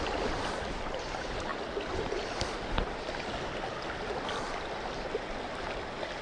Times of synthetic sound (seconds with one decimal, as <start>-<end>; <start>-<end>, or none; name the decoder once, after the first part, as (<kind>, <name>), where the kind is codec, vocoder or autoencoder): none